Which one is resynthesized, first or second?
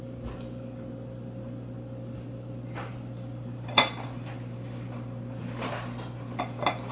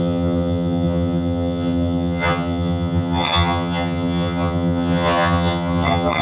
second